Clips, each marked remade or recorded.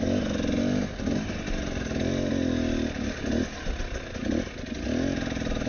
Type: recorded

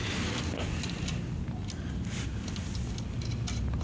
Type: recorded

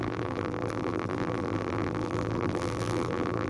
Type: remade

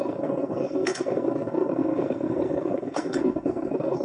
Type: remade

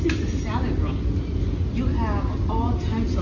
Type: recorded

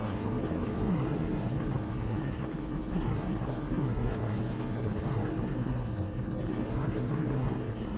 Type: remade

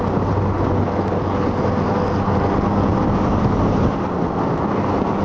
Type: recorded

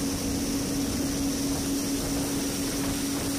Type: recorded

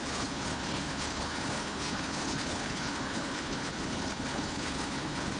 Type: remade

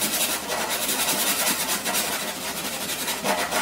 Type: remade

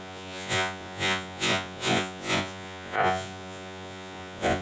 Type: remade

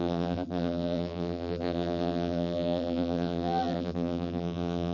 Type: remade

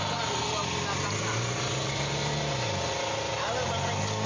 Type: recorded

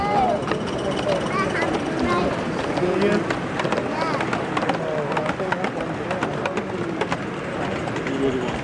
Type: recorded